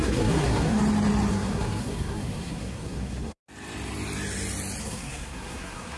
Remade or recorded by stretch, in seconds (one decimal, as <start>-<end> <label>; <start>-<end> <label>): 0.0-0.8 remade; 0.8-1.3 recorded; 1.3-3.4 remade; 3.4-4.8 recorded; 4.8-6.0 remade